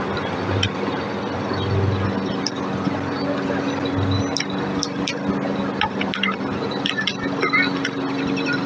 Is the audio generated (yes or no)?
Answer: no